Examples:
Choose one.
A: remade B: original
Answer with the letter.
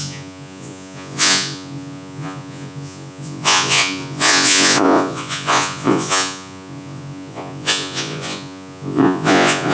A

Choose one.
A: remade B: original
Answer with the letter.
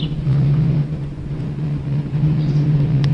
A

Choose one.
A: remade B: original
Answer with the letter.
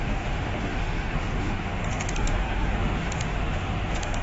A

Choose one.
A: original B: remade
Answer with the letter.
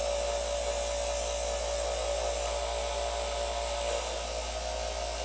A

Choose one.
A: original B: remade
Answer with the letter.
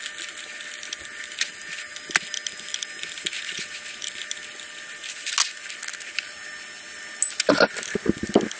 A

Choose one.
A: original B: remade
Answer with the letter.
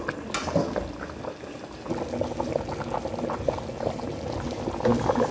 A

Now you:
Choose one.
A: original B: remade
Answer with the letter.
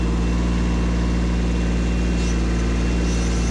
A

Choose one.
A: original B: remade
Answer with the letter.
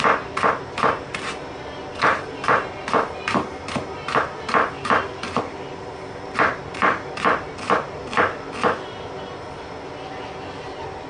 A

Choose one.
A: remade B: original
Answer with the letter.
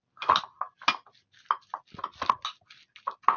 B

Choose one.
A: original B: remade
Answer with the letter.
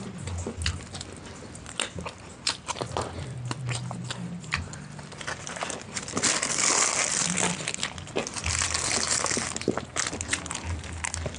A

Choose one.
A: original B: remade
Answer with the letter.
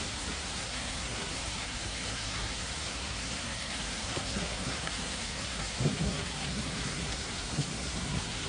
B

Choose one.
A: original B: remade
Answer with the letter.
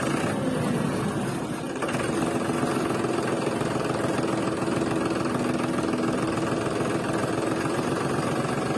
A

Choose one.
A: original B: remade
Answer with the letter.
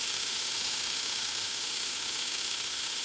B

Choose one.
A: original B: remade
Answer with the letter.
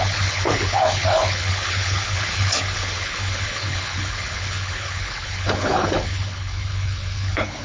B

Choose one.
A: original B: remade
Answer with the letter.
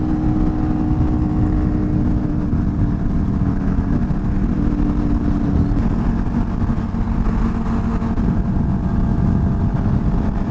A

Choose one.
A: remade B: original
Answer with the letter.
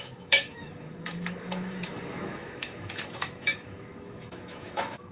A